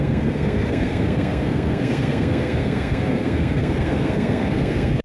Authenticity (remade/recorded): remade